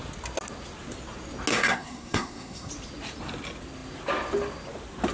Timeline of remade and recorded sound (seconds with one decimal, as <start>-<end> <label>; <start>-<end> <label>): 0.0-1.5 recorded; 1.5-2.7 remade; 2.7-5.1 recorded